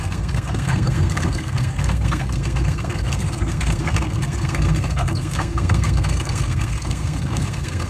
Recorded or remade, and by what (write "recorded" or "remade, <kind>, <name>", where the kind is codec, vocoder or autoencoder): remade, codec, SNAC